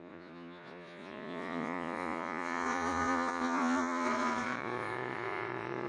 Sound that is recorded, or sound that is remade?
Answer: remade